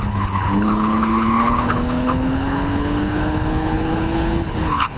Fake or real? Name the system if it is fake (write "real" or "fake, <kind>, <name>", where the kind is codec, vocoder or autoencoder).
fake, codec, HILCodec